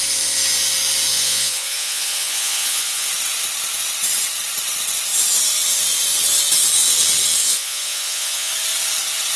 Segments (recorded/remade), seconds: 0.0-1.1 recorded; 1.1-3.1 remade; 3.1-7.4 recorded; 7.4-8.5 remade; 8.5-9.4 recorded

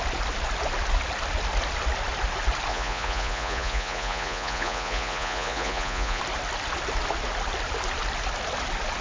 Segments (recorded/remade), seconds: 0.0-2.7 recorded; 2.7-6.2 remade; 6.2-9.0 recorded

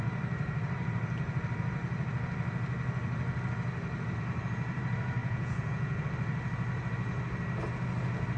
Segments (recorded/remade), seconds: 0.0-5.2 recorded; 5.2-6.0 remade; 6.0-8.4 recorded